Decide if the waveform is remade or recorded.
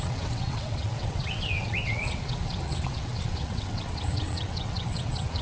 remade